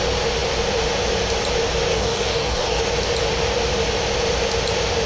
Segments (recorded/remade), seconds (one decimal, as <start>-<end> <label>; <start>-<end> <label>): 0.0-1.9 recorded; 1.9-2.8 remade; 2.8-5.1 recorded